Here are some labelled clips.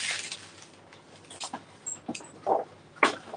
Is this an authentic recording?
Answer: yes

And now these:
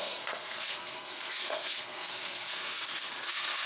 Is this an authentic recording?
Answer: no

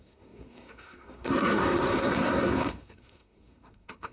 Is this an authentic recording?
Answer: no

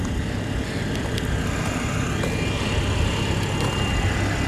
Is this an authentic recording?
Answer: yes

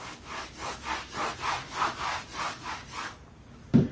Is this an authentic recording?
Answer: yes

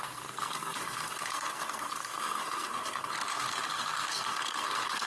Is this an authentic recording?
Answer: no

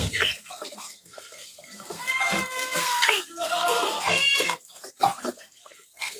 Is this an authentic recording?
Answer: no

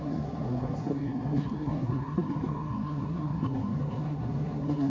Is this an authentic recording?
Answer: no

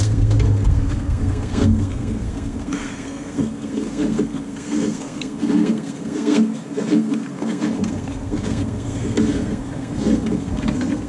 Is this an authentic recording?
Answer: no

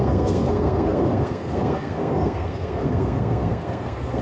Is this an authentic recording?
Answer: no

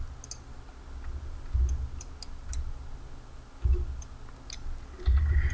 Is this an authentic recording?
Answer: yes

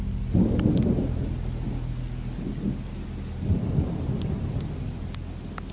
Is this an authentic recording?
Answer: yes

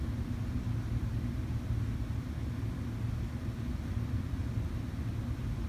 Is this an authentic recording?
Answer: yes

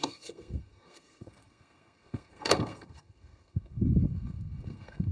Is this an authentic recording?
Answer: no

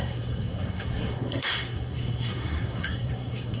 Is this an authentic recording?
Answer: no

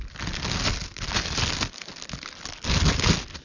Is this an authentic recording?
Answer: yes